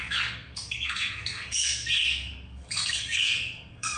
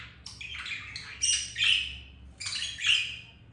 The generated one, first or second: first